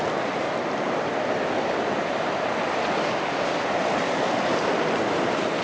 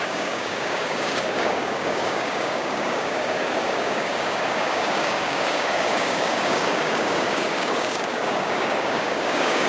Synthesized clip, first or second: second